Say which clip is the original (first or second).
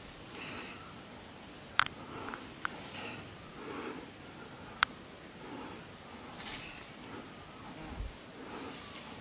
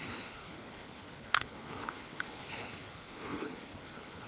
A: first